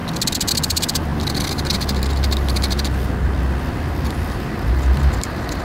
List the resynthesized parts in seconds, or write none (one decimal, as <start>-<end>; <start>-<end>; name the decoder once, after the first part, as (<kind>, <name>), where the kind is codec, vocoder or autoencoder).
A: none